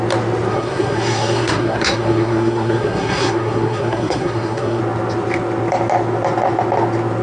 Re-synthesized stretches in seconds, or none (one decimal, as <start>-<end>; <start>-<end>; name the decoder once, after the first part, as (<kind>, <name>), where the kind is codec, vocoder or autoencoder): 0.5-4.8 (codec, SNAC)